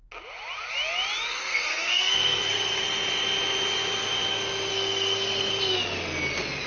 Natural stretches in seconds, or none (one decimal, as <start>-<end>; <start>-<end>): 0.0-1.3; 2.8-4.7; 5.5-6.7